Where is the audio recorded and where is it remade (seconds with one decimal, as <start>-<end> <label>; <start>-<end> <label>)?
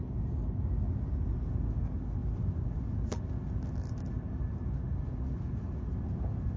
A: 0.0-6.6 recorded